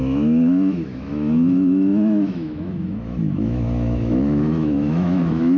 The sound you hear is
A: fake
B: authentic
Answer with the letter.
A